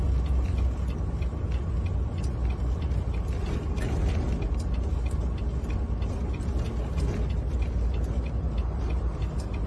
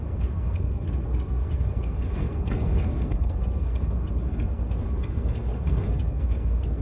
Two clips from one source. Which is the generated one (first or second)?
second